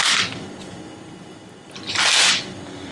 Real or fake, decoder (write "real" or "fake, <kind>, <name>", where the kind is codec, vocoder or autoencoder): real